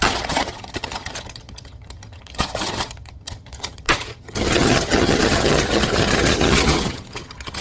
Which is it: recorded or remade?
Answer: remade